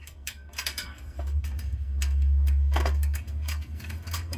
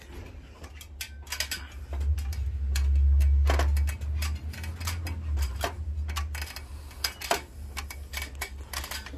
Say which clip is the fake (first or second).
first